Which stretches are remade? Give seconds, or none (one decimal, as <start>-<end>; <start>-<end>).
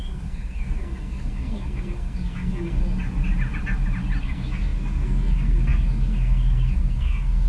0.0-2.8; 4.2-7.5